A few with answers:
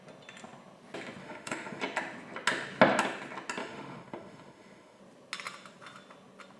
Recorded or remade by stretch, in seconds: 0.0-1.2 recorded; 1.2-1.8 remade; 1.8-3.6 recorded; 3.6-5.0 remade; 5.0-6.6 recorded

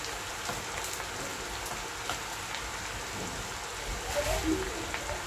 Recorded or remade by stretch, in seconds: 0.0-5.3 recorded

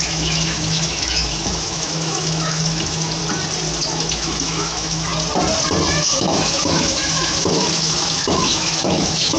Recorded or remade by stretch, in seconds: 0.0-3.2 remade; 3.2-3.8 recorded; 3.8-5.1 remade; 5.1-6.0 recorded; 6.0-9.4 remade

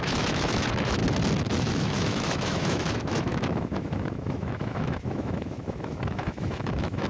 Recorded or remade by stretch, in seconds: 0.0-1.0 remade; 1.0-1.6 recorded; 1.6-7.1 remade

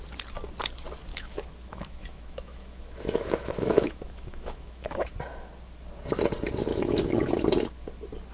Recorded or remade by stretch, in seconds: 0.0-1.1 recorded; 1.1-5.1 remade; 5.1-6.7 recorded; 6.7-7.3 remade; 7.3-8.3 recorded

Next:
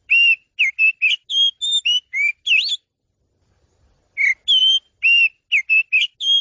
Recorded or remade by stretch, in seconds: 0.0-6.4 recorded

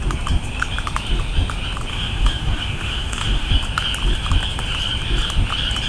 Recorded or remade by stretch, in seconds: 0.0-1.9 recorded; 1.9-3.5 remade; 3.5-5.9 recorded

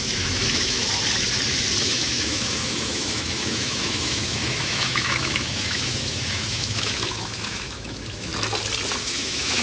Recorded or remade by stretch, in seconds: 0.0-0.8 remade; 0.8-1.8 recorded; 1.8-8.3 remade; 8.3-9.0 recorded; 9.0-9.6 remade